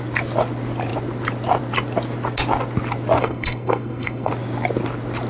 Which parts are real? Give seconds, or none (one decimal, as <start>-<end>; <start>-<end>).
0.0-3.2; 4.3-5.3